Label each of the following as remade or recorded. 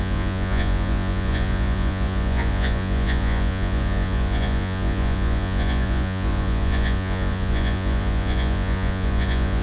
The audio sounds remade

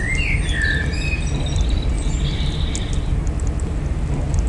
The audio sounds recorded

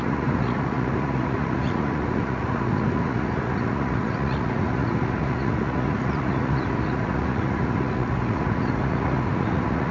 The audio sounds remade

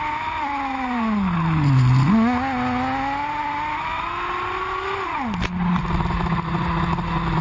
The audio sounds recorded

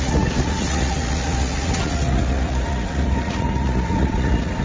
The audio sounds remade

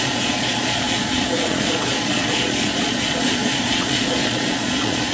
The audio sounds remade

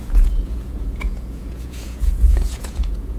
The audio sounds remade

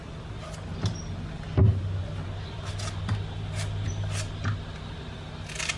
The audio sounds recorded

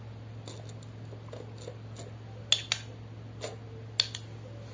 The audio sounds recorded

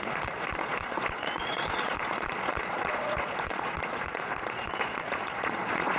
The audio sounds remade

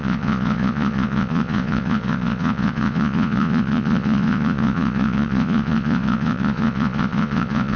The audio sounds remade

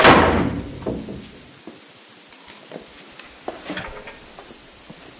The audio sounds recorded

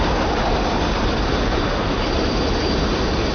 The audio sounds recorded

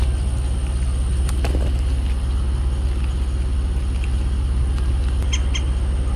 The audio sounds recorded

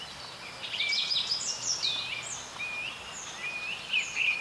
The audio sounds recorded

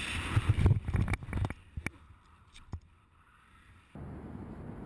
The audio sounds recorded